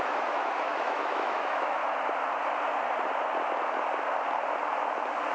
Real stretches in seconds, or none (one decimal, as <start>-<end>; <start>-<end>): 1.8-5.3